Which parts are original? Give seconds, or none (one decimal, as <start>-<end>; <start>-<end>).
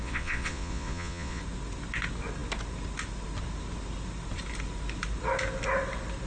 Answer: 1.4-6.3